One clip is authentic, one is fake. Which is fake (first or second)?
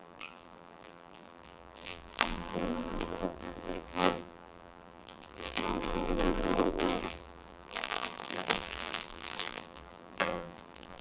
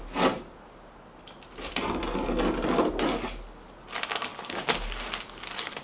first